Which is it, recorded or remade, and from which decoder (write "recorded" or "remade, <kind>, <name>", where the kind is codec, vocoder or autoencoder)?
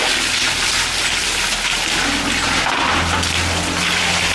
recorded